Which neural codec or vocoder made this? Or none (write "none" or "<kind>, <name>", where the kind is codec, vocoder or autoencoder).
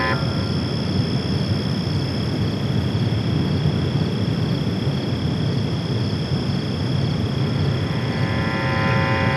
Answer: none